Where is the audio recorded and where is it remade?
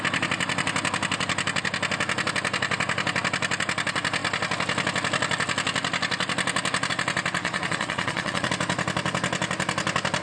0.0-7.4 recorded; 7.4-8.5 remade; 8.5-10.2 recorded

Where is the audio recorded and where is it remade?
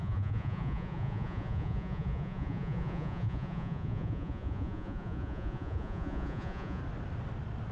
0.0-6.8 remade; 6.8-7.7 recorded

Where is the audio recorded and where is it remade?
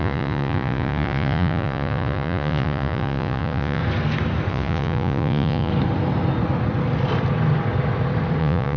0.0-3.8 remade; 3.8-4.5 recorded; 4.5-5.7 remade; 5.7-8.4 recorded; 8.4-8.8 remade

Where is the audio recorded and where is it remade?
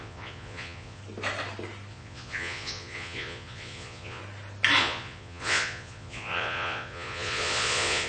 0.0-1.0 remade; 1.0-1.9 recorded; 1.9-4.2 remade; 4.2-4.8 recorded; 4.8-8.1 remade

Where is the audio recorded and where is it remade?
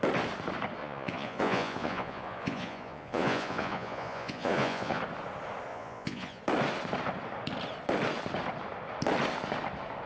0.0-0.8 recorded; 0.8-5.0 remade; 5.0-5.7 recorded; 5.7-6.4 remade; 6.4-10.1 recorded